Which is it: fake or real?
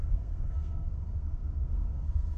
fake